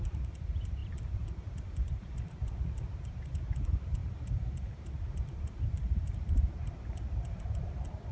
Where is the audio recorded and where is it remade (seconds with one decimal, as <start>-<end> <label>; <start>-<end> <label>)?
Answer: 0.0-8.1 remade